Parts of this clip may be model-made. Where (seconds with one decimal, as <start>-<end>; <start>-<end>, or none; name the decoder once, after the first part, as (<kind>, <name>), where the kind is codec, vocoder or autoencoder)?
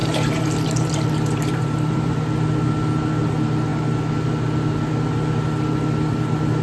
0.0-2.1 (vocoder, BigVGAN v2)